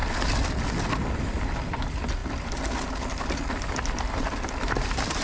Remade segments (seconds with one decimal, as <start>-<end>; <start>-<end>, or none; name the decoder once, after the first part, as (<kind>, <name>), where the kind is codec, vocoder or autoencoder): none